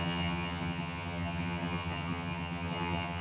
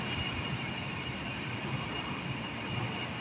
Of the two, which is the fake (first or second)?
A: first